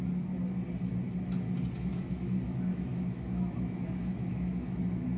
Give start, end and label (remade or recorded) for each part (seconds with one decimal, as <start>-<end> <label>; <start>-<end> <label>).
0.0-1.9 recorded; 1.9-5.2 remade